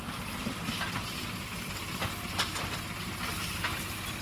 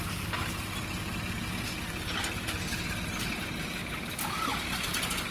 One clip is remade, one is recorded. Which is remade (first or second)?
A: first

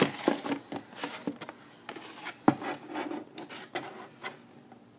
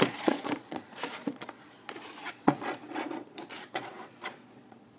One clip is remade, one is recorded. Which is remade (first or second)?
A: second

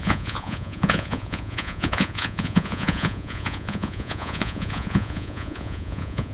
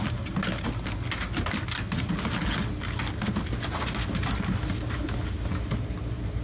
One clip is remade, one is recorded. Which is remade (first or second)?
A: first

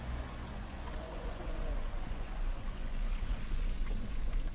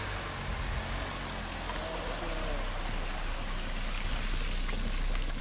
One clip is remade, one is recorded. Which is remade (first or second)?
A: first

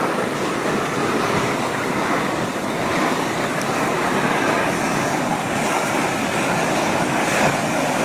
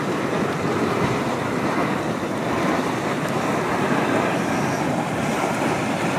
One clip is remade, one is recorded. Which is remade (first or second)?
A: first